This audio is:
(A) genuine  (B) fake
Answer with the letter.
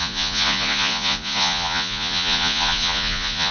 B